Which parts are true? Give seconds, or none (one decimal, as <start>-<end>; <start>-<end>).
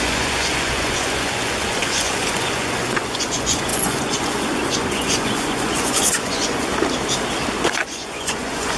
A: 6.7-7.6